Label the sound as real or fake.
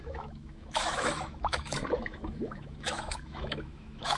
fake